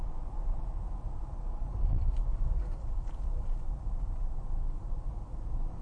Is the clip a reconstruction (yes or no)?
yes